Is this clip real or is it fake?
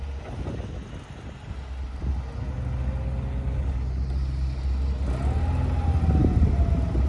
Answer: real